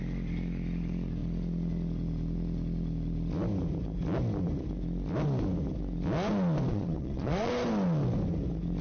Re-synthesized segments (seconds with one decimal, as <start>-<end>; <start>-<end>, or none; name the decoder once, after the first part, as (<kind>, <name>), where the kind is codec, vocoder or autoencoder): 6.7-7.5 (vocoder, Vocos)